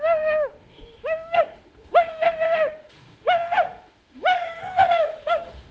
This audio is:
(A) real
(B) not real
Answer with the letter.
B